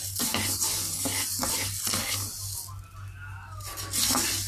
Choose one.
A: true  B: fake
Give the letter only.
A